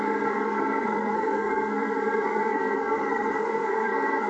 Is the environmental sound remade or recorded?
remade